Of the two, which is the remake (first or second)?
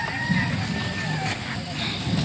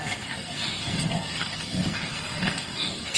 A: second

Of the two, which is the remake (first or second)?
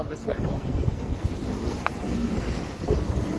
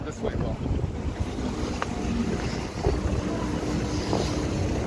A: first